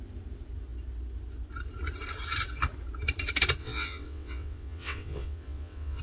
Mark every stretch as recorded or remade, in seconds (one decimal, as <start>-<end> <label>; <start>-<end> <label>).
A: 0.0-3.6 recorded; 3.6-6.0 remade